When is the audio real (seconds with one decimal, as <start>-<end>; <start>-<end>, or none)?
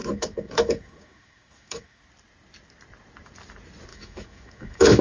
2.0-3.9